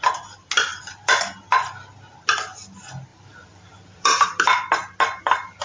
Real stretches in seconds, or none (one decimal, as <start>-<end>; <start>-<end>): 0.0-0.7; 1.2-3.1; 4.2-5.6